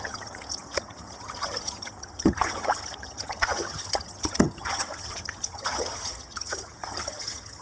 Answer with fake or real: fake